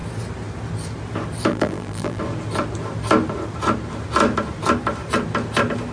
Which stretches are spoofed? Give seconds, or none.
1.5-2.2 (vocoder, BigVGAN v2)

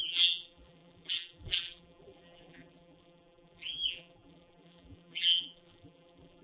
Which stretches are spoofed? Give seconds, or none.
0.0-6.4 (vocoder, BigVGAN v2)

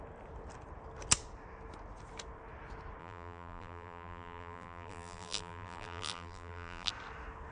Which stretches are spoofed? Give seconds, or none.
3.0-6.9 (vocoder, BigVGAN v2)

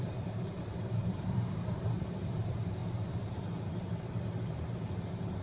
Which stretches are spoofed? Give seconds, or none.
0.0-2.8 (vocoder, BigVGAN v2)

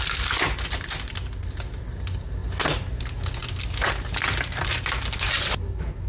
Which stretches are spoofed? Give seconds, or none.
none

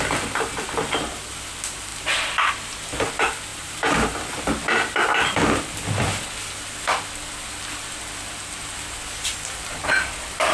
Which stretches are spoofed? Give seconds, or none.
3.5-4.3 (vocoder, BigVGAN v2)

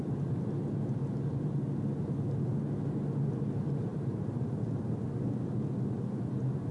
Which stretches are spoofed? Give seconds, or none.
3.9-4.9 (vocoder, BigVGAN v2)